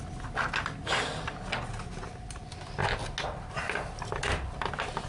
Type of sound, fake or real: real